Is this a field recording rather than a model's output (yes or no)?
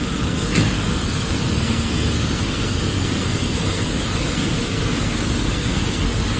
no